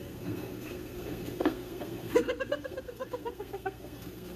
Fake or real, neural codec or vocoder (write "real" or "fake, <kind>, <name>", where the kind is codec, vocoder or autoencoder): fake, codec, SNAC